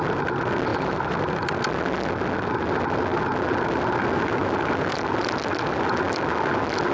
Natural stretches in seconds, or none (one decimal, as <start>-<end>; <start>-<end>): 0.0-0.7; 1.6-4.4; 4.9-6.9